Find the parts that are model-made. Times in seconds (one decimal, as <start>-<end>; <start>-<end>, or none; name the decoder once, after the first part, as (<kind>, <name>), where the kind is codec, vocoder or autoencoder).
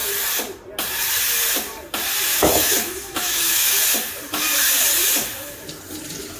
2.3-3.8 (autoencoder, DAC-VAE)